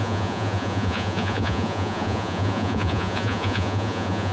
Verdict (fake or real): fake